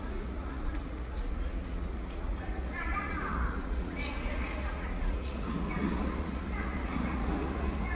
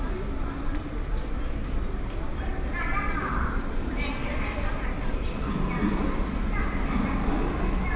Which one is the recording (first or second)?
second